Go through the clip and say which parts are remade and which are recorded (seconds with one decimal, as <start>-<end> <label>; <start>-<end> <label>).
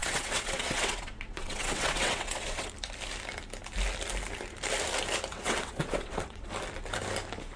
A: 0.0-2.7 remade; 2.7-5.3 recorded; 5.3-6.5 remade; 6.5-7.6 recorded